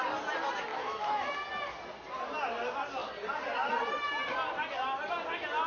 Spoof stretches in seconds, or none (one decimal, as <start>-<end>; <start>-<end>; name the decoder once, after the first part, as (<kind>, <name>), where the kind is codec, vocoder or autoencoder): 0.7-1.3 (autoencoder, DAC-VAE)